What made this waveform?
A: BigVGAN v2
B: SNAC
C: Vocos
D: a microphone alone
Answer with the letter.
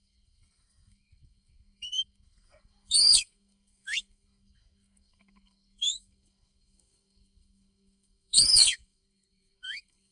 B